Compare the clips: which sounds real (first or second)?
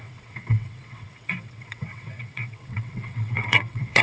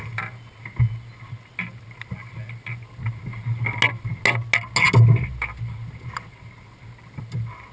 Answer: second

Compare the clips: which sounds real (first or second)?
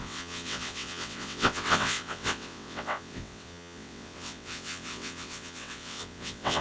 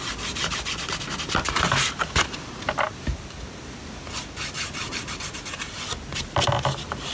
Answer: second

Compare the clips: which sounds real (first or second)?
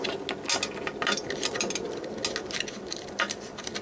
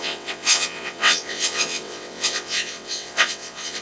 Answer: first